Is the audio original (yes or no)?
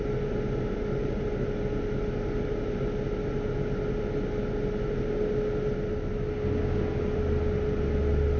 yes